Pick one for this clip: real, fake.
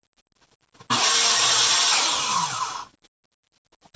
real